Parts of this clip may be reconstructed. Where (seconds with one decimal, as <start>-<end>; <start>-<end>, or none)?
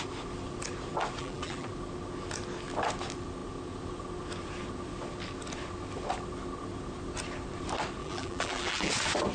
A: 1.2-1.7; 8.0-8.9